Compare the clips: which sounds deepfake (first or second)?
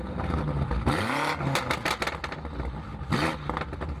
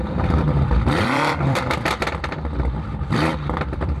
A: second